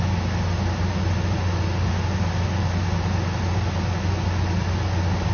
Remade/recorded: recorded